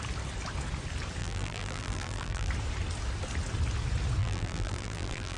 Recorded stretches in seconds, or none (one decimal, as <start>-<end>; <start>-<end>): 0.0-1.2; 2.5-4.2